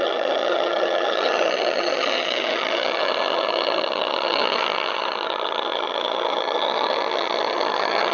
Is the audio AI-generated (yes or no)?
yes